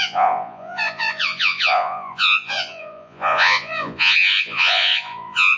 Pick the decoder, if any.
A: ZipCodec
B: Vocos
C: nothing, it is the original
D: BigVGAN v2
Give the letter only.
B